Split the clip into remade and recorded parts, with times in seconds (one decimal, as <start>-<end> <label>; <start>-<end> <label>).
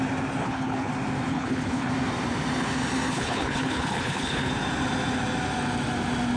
0.0-0.4 recorded; 0.4-0.9 remade; 0.9-1.3 recorded; 1.3-1.9 remade; 1.9-3.1 recorded; 3.1-4.5 remade; 4.5-6.4 recorded